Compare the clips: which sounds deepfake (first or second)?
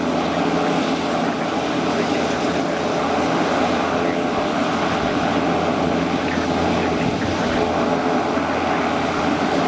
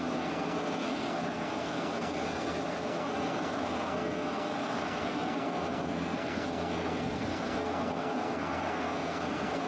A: second